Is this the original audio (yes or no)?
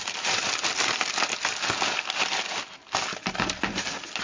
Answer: yes